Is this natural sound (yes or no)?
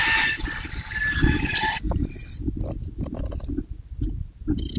yes